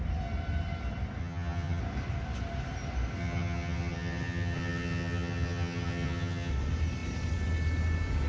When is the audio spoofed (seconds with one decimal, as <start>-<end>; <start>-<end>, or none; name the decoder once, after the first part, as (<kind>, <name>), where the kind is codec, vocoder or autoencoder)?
1.2-1.8 (vocoder, HiFi-GAN); 3.2-6.5